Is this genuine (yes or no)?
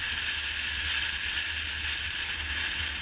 yes